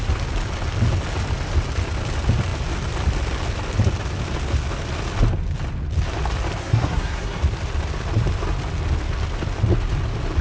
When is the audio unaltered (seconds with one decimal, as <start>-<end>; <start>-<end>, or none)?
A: 0.0-6.6; 7.4-10.4

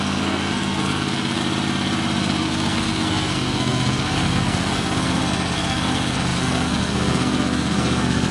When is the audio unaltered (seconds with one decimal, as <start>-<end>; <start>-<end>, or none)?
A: 1.4-2.2

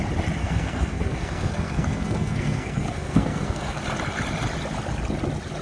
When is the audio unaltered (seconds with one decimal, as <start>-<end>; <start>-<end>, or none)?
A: 0.0-0.4; 3.8-5.6

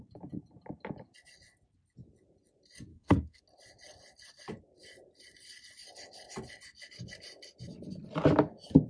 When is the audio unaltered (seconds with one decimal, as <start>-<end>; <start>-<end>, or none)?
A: 0.0-2.9; 3.4-8.9

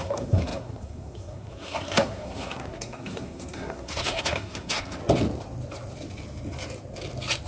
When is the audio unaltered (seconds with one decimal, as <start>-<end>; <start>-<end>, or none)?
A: 5.0-7.5

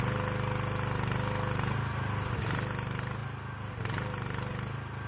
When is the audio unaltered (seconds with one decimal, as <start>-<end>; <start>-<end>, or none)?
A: 0.0-5.1

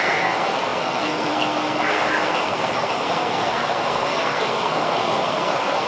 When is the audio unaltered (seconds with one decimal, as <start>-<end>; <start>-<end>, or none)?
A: none